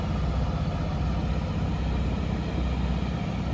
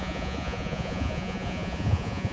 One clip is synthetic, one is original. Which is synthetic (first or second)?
second